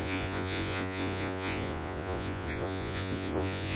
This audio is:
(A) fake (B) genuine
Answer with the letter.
A